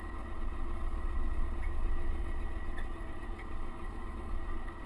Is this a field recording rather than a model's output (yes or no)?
no